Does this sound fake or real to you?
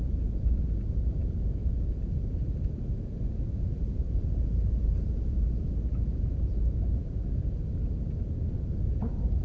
fake